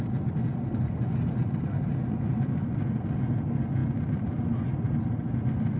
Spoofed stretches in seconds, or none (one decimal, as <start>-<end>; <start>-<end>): none